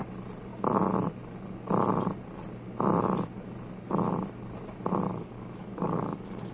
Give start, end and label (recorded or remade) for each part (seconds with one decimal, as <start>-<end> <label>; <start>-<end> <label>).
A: 0.0-5.1 recorded; 5.1-6.5 remade